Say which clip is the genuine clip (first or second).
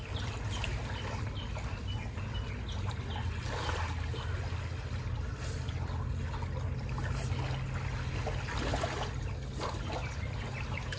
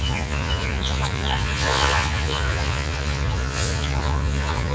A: first